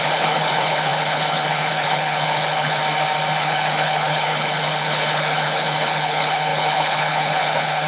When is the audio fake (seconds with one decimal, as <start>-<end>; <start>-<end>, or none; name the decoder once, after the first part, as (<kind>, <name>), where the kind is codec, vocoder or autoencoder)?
0.0-2.8 (codec, HILCodec); 3.3-7.9